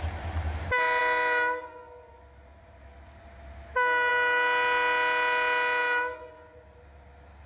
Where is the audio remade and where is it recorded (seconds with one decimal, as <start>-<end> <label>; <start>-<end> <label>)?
0.0-7.5 recorded

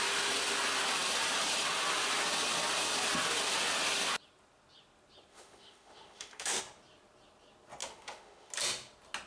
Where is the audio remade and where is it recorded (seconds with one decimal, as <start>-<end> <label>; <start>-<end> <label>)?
0.0-5.3 recorded; 5.3-6.6 remade; 6.6-7.8 recorded; 7.8-8.5 remade; 8.5-9.3 recorded

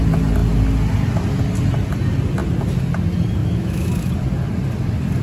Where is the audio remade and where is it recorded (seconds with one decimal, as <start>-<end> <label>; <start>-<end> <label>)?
0.0-3.4 recorded; 3.4-4.1 remade; 4.1-5.2 recorded

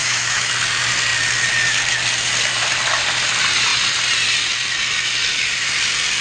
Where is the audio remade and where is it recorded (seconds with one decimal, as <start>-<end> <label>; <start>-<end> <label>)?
0.0-0.5 remade; 0.5-6.2 recorded

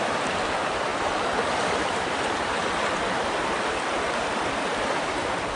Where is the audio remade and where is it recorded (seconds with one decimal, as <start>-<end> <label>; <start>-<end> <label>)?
0.0-5.6 recorded